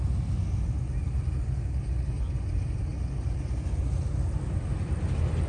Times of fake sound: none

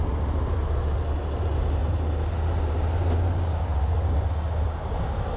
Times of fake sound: none

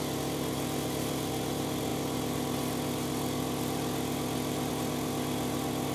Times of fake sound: none

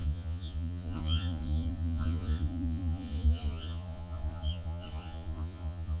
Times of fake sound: 0.0-6.0

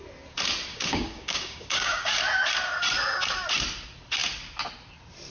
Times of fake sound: 0.7-2.2

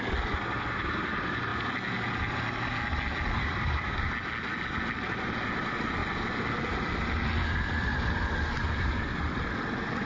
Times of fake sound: 3.4-4.1

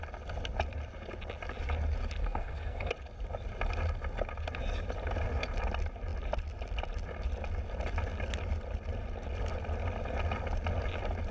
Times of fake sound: 2.2-2.9

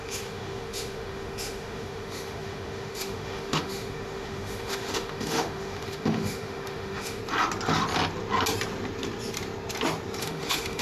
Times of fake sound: 0.0-7.2; 10.2-10.8